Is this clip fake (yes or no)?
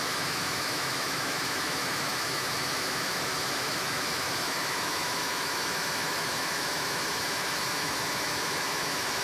yes